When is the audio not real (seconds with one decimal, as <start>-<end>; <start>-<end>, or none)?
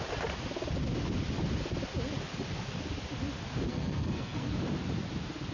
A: 3.7-4.5